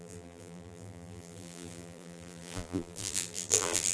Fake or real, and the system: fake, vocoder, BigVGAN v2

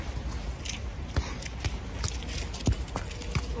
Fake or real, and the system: real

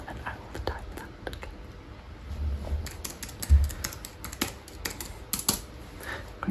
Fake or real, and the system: real